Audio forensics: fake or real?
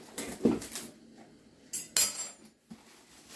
real